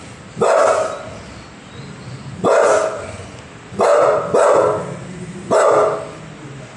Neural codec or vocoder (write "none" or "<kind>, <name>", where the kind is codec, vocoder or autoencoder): none